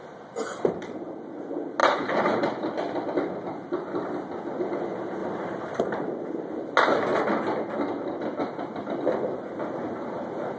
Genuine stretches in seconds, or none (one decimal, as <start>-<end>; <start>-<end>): 0.0-1.8; 2.7-5.2; 5.8-10.6